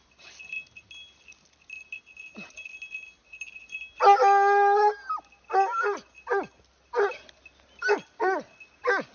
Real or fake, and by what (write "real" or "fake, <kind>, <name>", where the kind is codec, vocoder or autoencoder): real